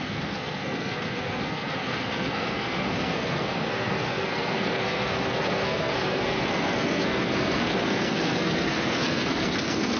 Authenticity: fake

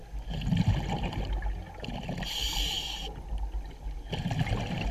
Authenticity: real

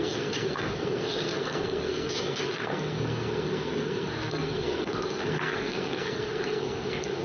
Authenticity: fake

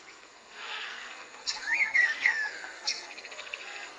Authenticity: fake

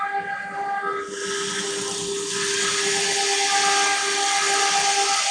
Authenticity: real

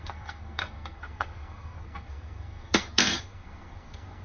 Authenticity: fake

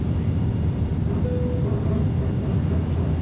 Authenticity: real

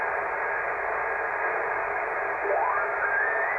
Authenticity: real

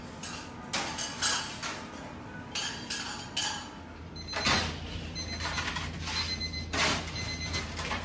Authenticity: real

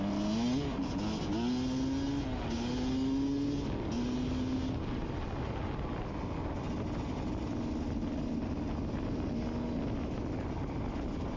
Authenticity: real